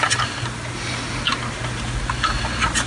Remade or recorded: recorded